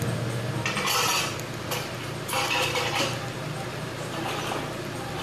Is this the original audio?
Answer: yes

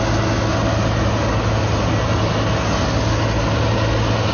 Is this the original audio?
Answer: yes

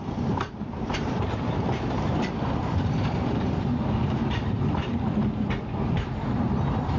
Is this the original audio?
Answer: no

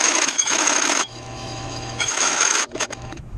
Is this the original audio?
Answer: no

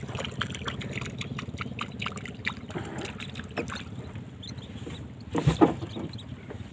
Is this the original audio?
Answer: yes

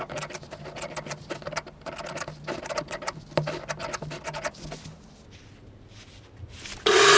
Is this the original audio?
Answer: yes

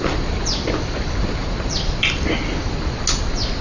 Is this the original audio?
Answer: yes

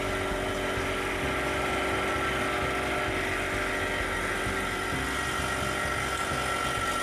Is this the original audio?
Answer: yes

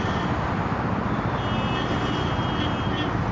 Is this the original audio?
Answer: yes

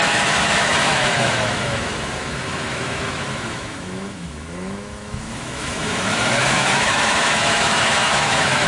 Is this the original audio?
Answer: no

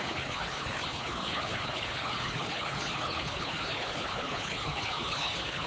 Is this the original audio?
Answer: no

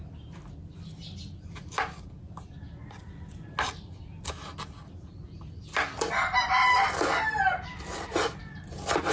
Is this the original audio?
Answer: yes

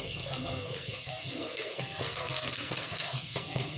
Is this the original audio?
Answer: no